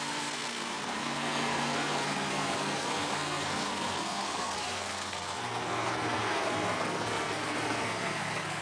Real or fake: fake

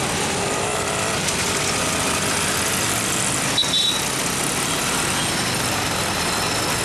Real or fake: real